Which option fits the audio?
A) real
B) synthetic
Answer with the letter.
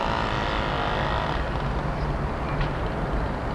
A